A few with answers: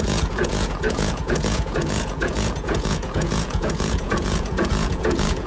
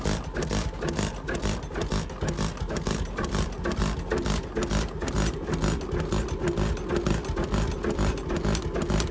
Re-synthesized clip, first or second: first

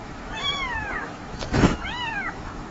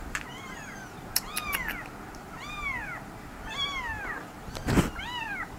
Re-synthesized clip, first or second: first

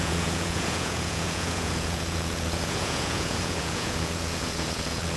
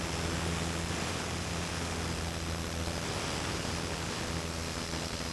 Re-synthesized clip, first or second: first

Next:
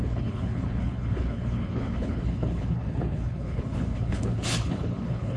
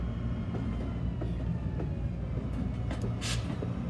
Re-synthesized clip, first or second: first